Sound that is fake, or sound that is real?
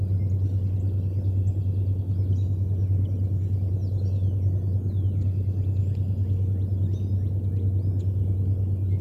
real